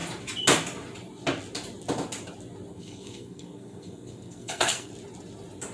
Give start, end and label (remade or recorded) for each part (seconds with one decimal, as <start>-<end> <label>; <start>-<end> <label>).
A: 0.0-2.7 recorded; 2.7-4.9 remade; 4.9-5.7 recorded